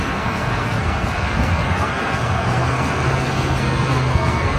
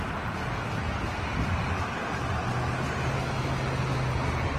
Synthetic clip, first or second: first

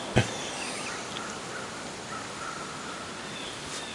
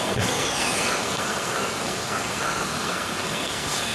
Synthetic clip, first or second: second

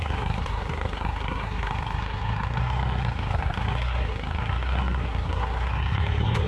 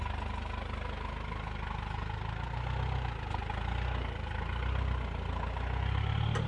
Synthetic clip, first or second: first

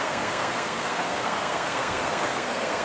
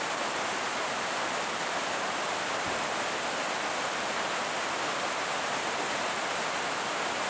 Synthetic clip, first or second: first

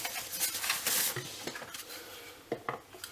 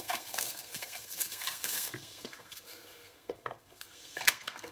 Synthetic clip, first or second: second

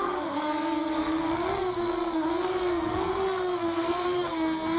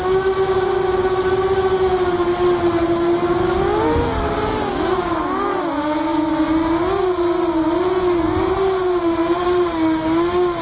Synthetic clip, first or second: first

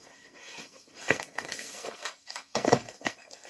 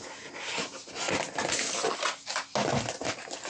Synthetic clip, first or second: first